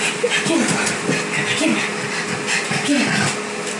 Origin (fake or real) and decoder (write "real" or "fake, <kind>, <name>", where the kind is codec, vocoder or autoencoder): real